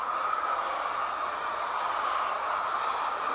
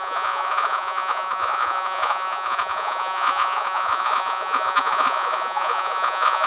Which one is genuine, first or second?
first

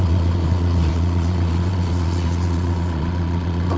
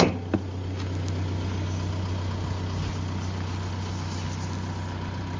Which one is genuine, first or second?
second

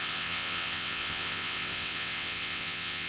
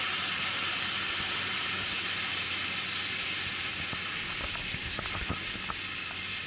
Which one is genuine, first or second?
second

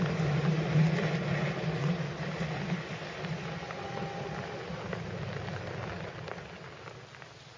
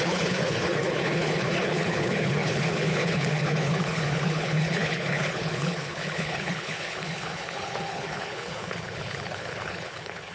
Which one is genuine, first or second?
first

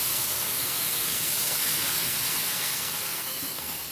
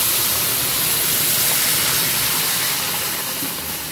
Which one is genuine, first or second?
second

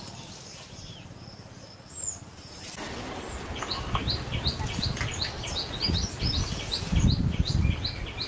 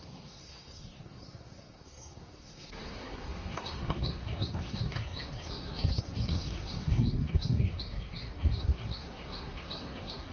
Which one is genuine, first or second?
first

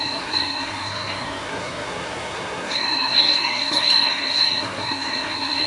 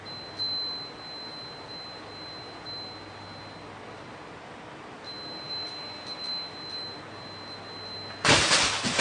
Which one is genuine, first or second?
second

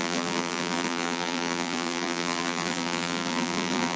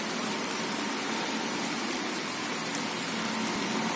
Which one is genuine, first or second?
second